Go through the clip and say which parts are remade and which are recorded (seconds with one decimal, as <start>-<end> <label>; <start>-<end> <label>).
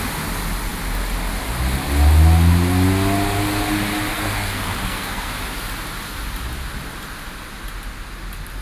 0.0-4.1 recorded; 4.1-5.3 remade; 5.3-8.6 recorded